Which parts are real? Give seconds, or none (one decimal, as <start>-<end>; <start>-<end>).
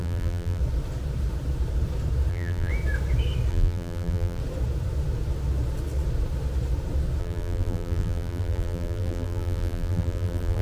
0.6-2.3; 2.7-3.5; 4.4-7.2